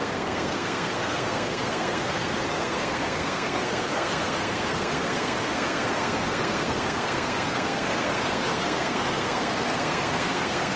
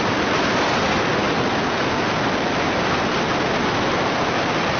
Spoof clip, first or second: first